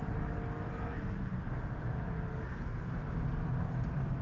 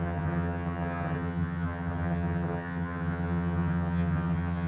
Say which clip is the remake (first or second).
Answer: second